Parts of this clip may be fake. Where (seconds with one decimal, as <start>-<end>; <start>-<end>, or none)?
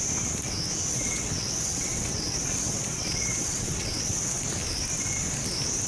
0.9-4.4